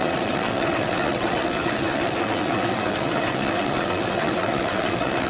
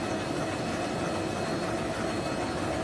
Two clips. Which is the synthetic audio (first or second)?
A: first